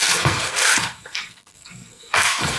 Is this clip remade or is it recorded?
remade